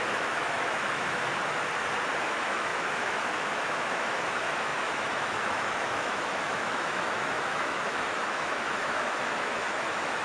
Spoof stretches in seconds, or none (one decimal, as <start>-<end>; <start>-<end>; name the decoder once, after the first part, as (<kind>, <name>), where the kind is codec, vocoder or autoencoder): 0.0-1.3 (autoencoder, DAC-VAE); 2.2-10.2